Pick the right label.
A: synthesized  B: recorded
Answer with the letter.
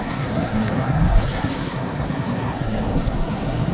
A